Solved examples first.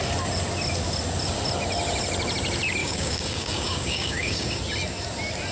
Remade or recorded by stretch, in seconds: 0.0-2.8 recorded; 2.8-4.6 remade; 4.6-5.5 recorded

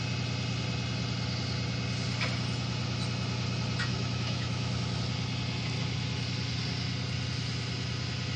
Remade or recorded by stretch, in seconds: 0.0-3.9 recorded; 3.9-5.0 remade; 5.0-8.4 recorded

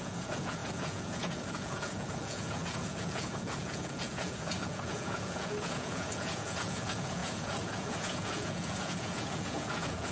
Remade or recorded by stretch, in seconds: 0.0-10.1 remade

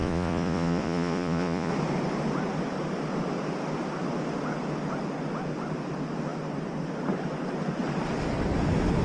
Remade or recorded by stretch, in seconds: 0.0-1.7 remade; 1.7-9.0 recorded

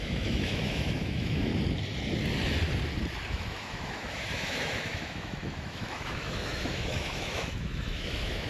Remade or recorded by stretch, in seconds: 0.0-1.5 remade; 1.5-3.3 recorded; 3.3-8.5 remade

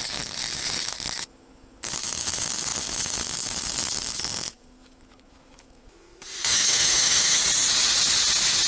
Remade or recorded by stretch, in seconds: 0.0-7.4 remade; 7.4-8.7 recorded

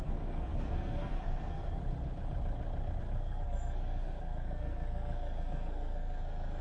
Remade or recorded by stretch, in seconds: 0.0-1.8 remade; 1.8-3.0 recorded; 3.0-6.6 remade

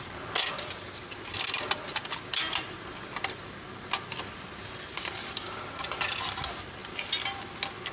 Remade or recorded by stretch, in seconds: 0.0-0.4 recorded; 0.4-4.7 remade; 4.7-6.8 recorded; 6.8-7.4 remade; 7.4-7.9 recorded